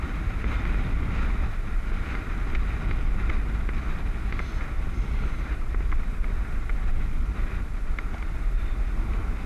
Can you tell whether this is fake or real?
real